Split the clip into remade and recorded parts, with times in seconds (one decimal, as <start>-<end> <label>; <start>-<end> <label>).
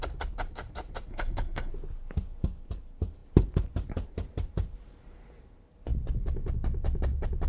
0.0-1.1 recorded; 1.1-1.7 remade; 1.7-7.5 recorded